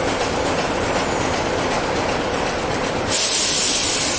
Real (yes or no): yes